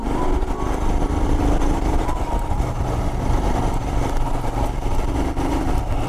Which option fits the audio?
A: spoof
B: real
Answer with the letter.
A